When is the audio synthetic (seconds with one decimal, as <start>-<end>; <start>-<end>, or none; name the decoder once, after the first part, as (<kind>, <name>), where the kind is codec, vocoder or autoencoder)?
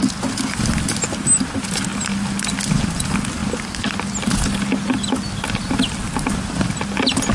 none